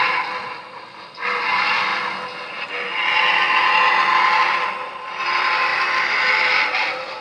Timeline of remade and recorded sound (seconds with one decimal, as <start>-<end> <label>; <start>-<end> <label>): 0.0-1.9 remade; 1.9-4.4 recorded; 4.4-7.2 remade

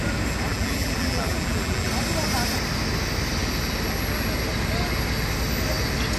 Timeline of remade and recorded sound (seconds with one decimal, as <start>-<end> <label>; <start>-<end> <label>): 0.0-0.5 recorded; 0.5-1.9 remade; 1.9-6.2 recorded

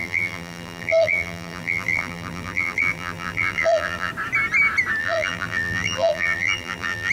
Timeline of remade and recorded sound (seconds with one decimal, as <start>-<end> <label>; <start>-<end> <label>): 0.0-4.1 remade; 4.1-5.0 recorded; 5.0-7.1 remade

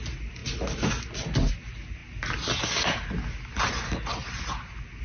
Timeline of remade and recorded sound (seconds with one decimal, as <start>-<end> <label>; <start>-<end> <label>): 0.0-5.0 recorded